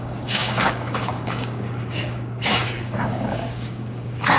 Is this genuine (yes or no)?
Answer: no